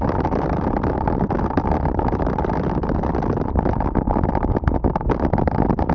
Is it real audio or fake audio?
real